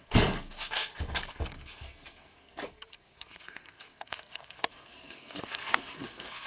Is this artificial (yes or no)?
yes